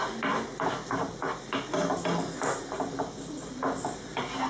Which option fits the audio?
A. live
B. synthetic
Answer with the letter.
A